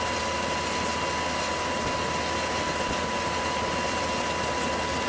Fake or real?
real